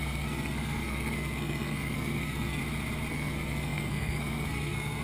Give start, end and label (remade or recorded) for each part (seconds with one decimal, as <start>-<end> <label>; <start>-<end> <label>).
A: 0.0-2.6 remade; 2.6-3.1 recorded; 3.1-5.0 remade